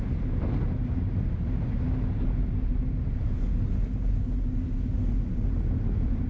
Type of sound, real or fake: real